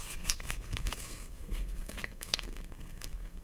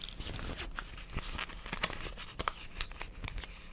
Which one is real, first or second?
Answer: second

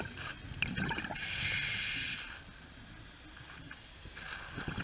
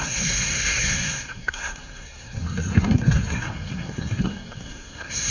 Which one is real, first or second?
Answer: first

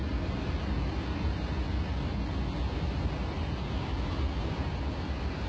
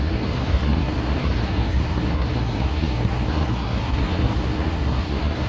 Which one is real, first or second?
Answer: first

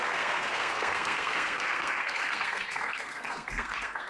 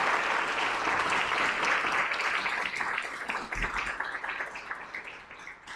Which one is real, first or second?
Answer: second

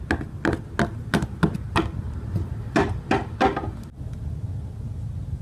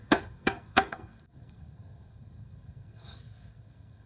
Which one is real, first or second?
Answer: first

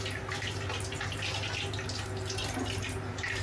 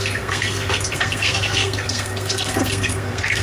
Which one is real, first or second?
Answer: first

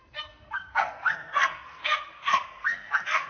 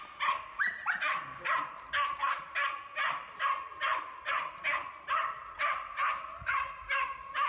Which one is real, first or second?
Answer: second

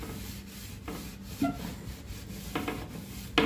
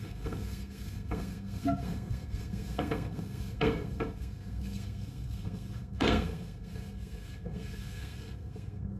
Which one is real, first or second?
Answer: first